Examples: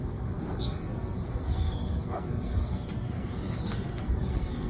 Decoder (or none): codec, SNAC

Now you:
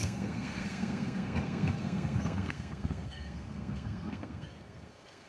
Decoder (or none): codec, SNAC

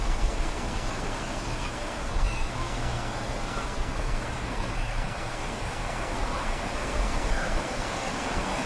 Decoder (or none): codec, SNAC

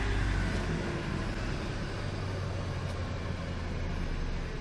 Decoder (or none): none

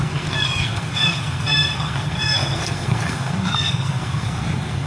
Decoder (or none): codec, SNAC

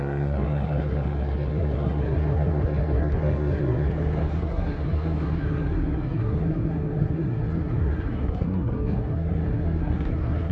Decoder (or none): codec, SNAC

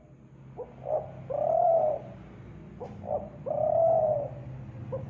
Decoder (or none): none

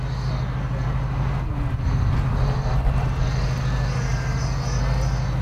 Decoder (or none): none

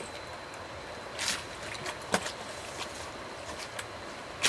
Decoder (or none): none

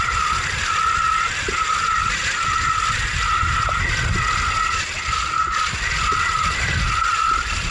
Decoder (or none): none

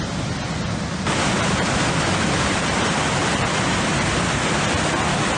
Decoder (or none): none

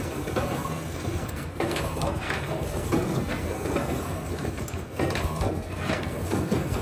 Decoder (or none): codec, SNAC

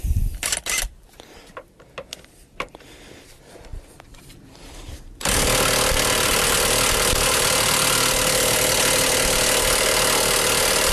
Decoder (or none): none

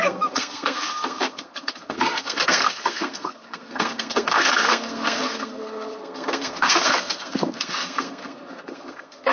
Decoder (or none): codec, SNAC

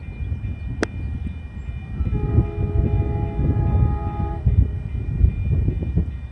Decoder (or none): none